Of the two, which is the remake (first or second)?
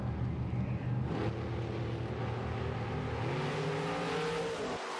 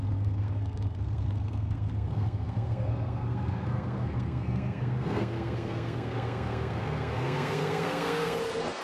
second